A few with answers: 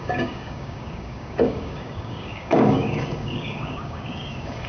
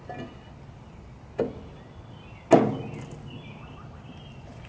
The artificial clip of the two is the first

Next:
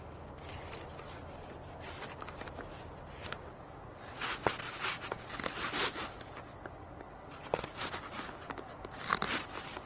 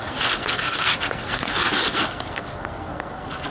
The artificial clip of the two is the second